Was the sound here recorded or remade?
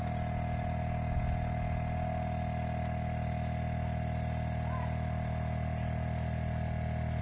recorded